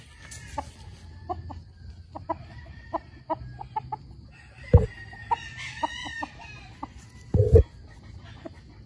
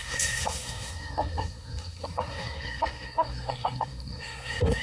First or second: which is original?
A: first